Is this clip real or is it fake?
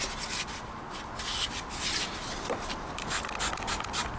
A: real